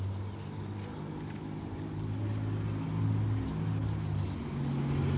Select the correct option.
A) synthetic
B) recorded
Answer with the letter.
B